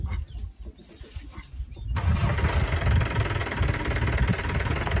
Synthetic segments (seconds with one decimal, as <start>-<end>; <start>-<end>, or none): none